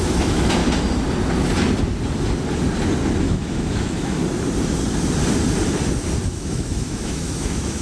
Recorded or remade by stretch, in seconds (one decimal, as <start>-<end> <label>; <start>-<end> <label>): 0.0-0.6 remade; 0.6-3.2 recorded; 3.2-4.2 remade; 4.2-6.3 recorded; 6.3-7.8 remade